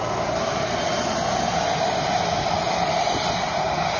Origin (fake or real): real